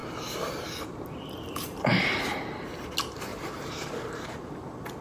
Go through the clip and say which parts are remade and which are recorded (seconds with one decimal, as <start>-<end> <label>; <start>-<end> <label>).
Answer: 0.0-2.9 remade; 2.9-3.3 recorded; 3.3-4.4 remade; 4.4-5.0 recorded